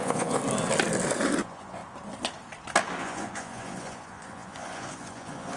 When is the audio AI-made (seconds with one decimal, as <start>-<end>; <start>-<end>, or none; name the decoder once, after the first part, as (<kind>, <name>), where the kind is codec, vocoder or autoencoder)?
0.0-0.4 (vocoder, Vocos); 1.4-1.8; 3.0-5.6